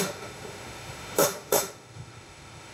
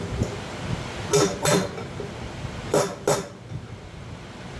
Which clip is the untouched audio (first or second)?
second